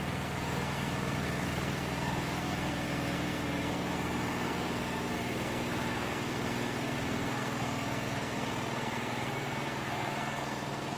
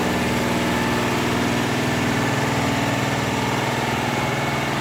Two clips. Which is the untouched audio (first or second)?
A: second